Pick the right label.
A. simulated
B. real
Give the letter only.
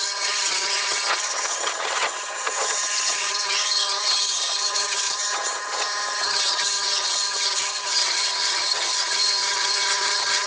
A